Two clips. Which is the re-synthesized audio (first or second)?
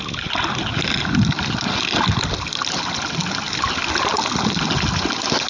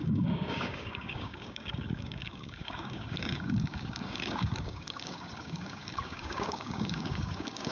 second